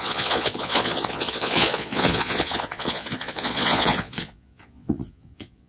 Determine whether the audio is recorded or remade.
remade